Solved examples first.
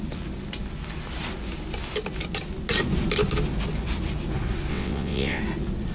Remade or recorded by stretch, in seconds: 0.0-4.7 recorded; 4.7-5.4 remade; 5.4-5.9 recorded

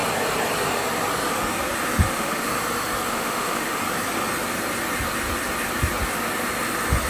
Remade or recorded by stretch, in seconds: 0.0-2.1 recorded; 2.1-2.5 remade; 2.5-3.1 recorded; 3.1-3.8 remade; 3.8-7.1 recorded